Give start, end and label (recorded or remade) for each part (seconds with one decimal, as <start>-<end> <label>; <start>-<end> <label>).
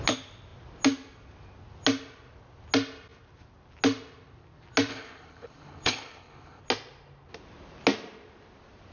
0.0-4.9 recorded; 4.9-6.6 remade; 6.6-8.9 recorded